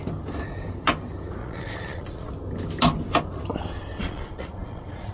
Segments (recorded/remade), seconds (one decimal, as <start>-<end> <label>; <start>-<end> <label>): 0.0-1.4 recorded; 1.4-2.3 remade; 2.3-3.9 recorded; 3.9-5.1 remade